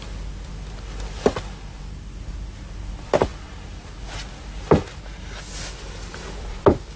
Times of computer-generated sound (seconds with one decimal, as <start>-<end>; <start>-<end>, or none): none